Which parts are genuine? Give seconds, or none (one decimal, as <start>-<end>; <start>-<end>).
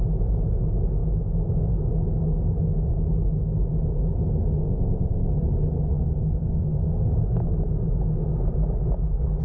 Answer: 0.0-4.6; 5.3-9.4